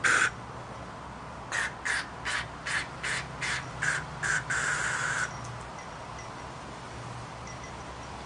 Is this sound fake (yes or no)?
no